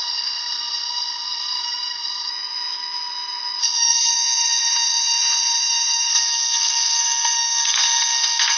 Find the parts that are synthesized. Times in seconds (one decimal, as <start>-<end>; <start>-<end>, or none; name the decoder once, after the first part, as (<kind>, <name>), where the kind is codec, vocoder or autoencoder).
0.0-2.3 (codec, SNAC); 3.6-4.1; 6.1-8.6